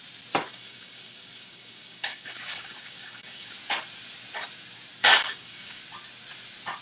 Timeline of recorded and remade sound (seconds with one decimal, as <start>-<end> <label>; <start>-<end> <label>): 0.0-0.5 recorded; 0.5-3.5 remade; 3.5-5.0 recorded; 5.0-5.8 remade; 5.8-6.8 recorded